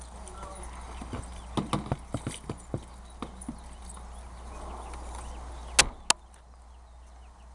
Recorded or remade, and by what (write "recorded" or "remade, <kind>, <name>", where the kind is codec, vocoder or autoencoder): recorded